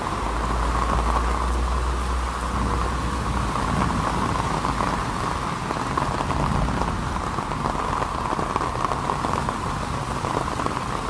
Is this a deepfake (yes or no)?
no